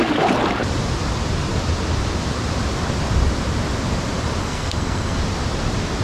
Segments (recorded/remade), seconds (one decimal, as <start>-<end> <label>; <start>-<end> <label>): 0.0-4.4 recorded; 4.4-5.2 remade; 5.2-6.0 recorded